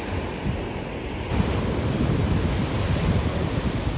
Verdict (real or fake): real